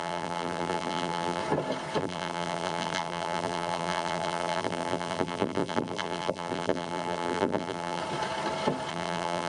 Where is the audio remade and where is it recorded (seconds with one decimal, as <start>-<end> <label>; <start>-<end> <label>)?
0.0-1.4 remade; 1.4-2.0 recorded; 2.0-8.0 remade; 8.0-8.9 recorded; 8.9-9.5 remade